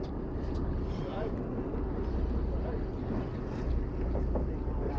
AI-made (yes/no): no